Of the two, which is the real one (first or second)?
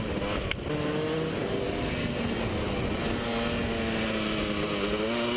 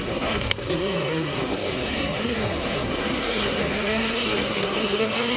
first